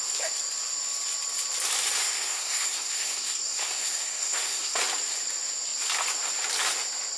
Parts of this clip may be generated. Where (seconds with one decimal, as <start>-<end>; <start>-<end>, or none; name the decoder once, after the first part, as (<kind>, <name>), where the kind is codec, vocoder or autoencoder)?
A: 2.0-4.8 (codec, SNAC)